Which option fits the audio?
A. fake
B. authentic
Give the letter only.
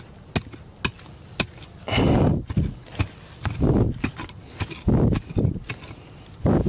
B